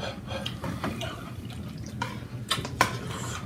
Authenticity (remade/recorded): recorded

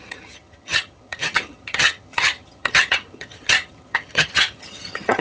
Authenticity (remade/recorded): remade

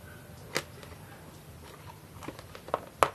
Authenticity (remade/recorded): recorded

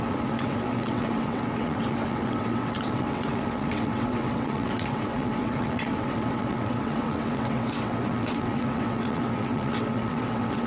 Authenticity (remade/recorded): remade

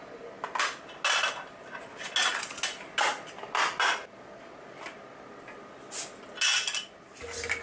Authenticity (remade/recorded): recorded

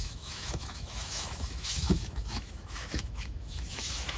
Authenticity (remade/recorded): remade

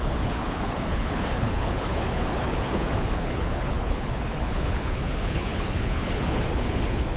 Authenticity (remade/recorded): remade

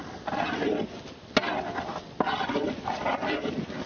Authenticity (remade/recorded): recorded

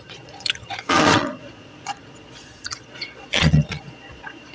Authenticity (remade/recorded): remade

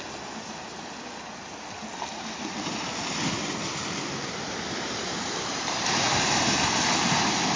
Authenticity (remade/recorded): recorded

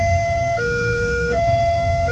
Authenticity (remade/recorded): remade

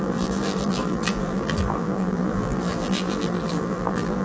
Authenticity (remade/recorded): remade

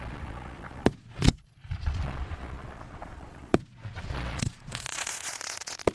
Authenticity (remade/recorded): remade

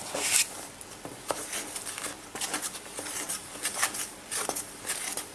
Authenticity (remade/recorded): remade